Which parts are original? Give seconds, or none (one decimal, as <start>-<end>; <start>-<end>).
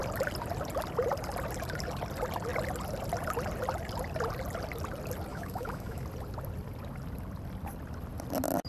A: 0.0-5.3; 6.0-8.7